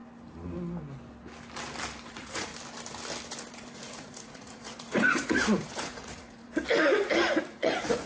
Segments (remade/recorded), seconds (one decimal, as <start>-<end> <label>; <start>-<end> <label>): 0.0-2.1 recorded; 2.1-2.5 remade; 2.5-3.5 recorded; 3.5-6.5 remade; 6.5-7.4 recorded; 7.4-8.1 remade